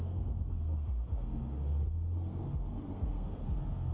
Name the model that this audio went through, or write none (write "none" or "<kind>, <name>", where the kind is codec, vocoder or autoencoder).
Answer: codec, SNAC